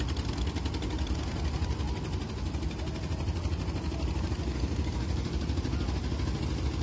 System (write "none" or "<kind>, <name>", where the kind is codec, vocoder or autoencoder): none